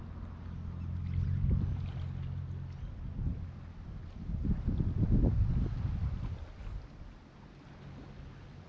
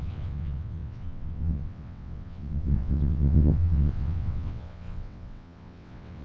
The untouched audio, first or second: first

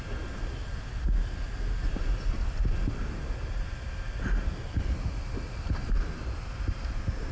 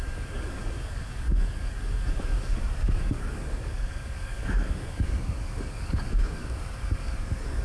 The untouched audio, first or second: first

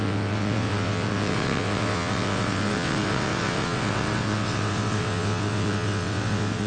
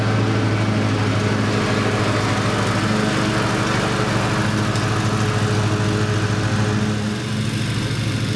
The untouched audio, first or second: second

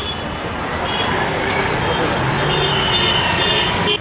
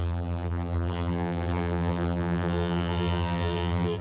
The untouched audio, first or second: first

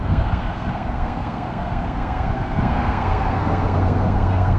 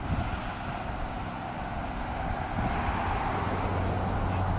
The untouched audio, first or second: second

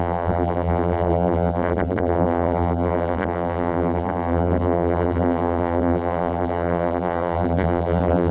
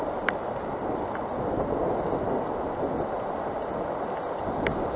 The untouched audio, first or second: second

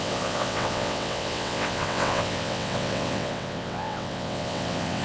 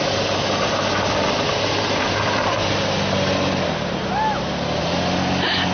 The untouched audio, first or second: second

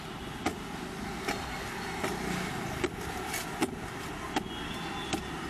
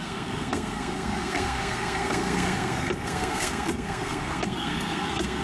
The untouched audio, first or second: first